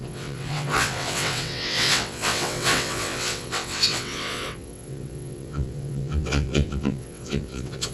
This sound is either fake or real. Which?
fake